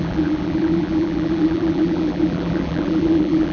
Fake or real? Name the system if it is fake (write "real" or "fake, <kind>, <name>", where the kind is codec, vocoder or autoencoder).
fake, vocoder, BigVGAN v2